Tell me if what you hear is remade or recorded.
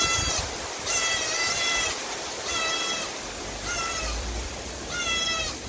remade